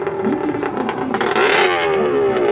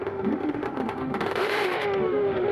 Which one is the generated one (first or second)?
second